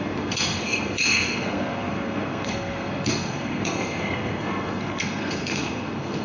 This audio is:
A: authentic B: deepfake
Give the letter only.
B